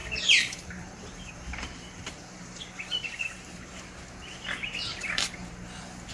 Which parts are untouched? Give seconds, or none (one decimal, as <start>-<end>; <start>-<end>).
3.7-4.9